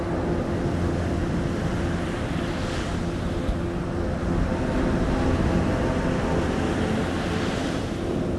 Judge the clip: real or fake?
real